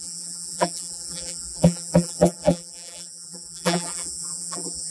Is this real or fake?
fake